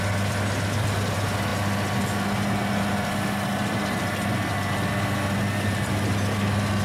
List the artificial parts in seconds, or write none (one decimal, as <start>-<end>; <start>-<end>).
none